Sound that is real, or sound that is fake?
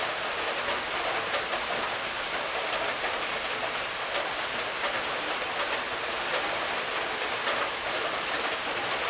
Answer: real